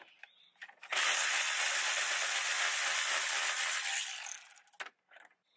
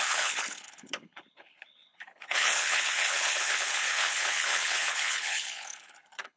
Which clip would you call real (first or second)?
first